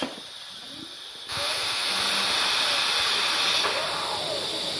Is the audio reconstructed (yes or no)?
no